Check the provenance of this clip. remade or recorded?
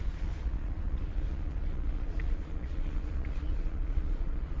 remade